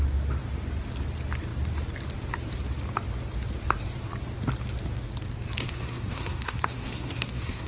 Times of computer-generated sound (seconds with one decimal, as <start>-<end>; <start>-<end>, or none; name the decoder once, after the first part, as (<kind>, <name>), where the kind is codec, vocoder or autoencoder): 5.6-7.7 (codec, SNAC)